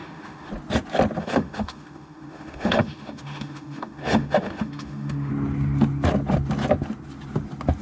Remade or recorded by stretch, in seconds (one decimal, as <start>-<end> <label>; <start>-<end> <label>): 0.0-0.5 remade; 0.5-1.2 recorded; 1.2-5.3 remade; 5.3-7.8 recorded